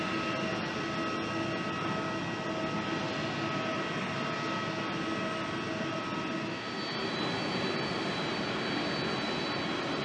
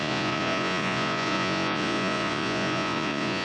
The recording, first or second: first